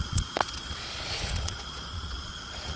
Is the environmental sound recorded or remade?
remade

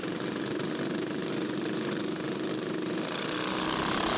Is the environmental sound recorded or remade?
recorded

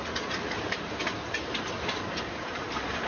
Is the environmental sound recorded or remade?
recorded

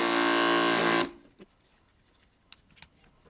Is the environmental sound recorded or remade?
recorded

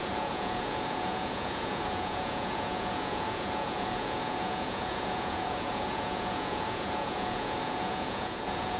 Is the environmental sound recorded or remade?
remade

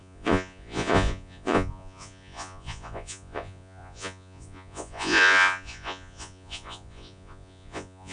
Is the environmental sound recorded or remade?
remade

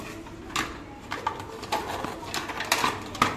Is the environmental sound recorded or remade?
recorded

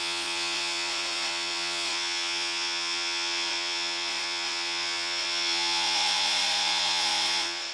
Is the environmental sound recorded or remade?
remade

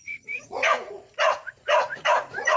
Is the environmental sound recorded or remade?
remade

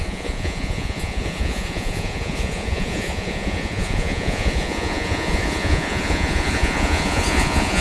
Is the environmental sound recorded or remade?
remade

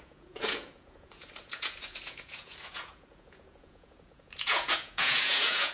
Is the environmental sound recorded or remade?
remade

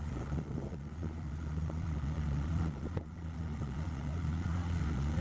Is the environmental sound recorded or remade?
remade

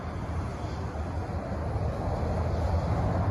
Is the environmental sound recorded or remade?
recorded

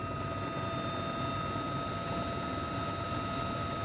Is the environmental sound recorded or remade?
recorded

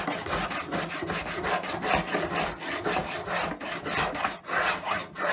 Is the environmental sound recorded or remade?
recorded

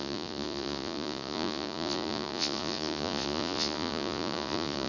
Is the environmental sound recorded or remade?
remade